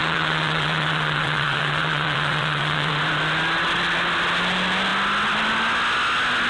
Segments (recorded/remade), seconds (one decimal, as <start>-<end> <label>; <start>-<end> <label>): 0.0-2.9 remade; 2.9-6.5 recorded